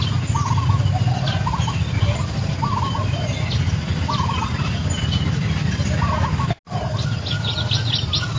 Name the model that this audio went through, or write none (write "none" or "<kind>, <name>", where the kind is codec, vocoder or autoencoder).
none